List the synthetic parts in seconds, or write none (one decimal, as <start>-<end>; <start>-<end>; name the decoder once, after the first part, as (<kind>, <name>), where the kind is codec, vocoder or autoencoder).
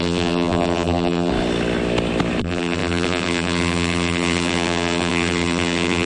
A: 0.0-1.3 (vocoder, BigVGAN v2); 2.4-6.1